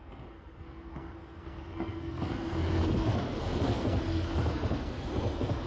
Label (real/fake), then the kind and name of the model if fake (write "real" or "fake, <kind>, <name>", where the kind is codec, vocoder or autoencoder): fake, codec, SNAC